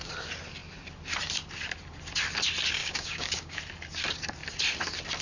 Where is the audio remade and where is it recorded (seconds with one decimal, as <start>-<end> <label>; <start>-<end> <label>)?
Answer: 0.0-2.8 recorded; 2.8-3.6 remade; 3.6-5.2 recorded